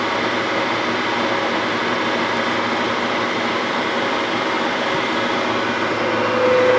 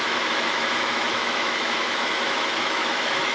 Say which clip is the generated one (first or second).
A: second